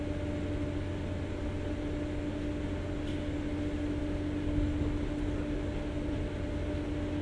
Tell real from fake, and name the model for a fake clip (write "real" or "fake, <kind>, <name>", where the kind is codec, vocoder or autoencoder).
real